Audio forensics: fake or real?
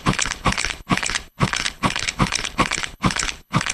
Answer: fake